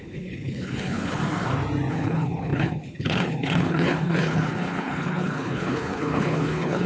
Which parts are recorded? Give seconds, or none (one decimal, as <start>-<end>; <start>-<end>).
1.2-1.9